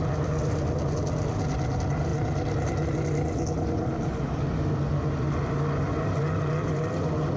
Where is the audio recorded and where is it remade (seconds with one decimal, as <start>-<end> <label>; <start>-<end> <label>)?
0.0-7.4 recorded